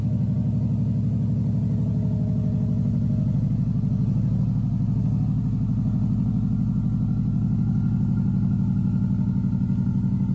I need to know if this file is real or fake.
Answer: real